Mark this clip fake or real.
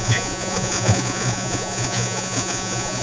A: fake